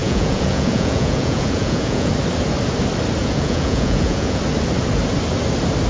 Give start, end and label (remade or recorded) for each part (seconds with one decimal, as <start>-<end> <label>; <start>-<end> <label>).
0.0-2.1 remade; 2.1-3.2 recorded; 3.2-4.4 remade; 4.4-5.9 recorded